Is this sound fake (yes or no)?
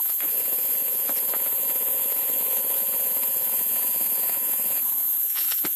yes